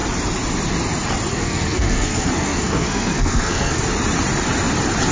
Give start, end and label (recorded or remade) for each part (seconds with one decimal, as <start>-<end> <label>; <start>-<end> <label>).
0.0-1.3 recorded; 1.3-3.8 remade; 3.8-5.1 recorded